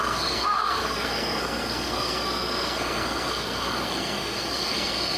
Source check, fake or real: fake